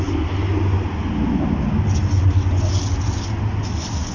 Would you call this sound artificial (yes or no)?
no